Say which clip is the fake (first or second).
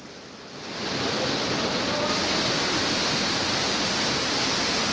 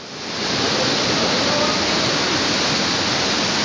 second